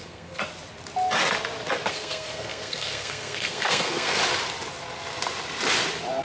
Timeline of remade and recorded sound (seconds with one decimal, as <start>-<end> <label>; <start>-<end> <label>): 0.0-0.4 remade; 0.4-1.9 recorded; 1.9-4.2 remade; 4.2-6.2 recorded